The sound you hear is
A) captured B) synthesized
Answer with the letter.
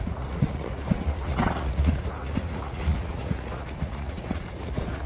B